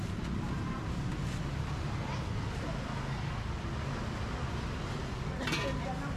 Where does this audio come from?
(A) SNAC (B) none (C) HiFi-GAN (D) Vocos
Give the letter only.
B